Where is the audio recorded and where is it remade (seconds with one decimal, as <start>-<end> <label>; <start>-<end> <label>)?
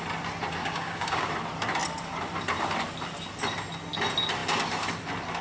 0.0-0.6 recorded; 0.6-1.3 remade; 1.3-5.4 recorded